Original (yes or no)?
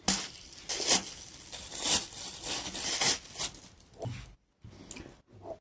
yes